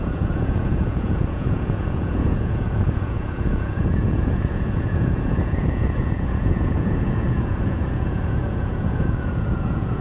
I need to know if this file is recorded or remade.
remade